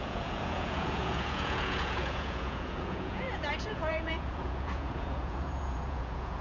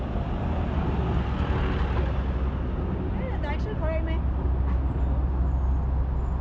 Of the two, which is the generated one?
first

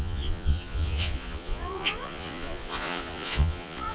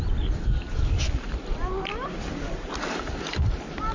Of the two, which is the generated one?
first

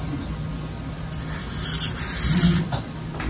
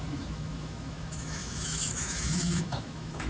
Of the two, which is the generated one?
second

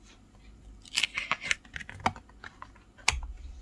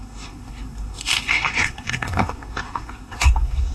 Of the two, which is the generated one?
second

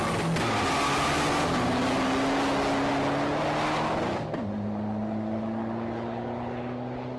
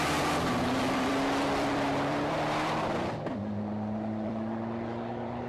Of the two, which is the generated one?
second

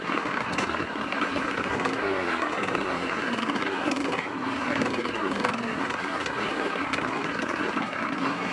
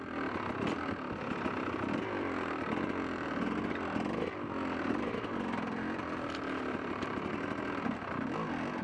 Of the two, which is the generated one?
first